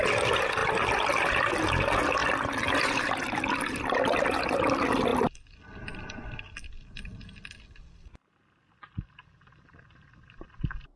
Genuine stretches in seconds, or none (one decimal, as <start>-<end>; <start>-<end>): 0.0-0.6; 1.3-2.2; 3.4-5.1; 5.6-11.0